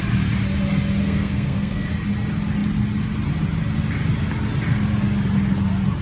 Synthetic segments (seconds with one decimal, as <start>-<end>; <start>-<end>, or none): 1.0-1.9